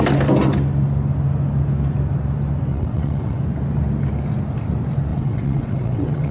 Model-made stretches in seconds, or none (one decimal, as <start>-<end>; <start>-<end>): 2.7-3.4; 5.1-6.3